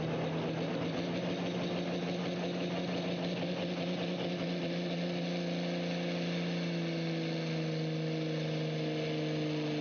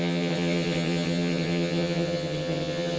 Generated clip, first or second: second